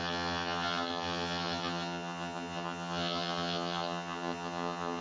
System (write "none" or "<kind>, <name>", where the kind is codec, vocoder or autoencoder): vocoder, HiFi-GAN